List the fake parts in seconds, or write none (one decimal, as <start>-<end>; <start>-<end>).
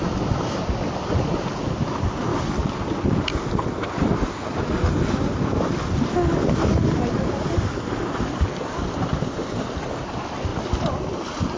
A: 6.4-7.6